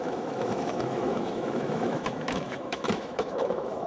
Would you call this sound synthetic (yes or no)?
yes